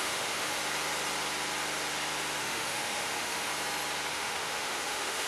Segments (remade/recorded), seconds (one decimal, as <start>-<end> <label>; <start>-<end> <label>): 0.0-0.6 remade; 0.6-2.4 recorded; 2.4-3.5 remade; 3.5-4.1 recorded; 4.1-5.3 remade